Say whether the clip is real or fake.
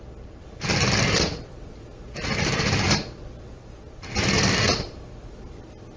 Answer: fake